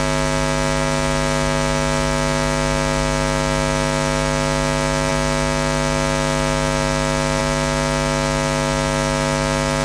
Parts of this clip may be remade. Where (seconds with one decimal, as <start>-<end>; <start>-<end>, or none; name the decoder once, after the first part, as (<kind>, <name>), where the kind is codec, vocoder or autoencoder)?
none